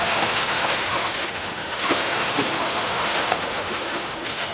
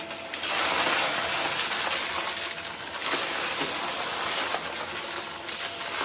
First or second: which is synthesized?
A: first